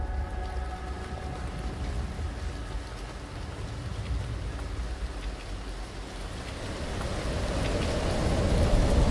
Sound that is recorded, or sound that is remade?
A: recorded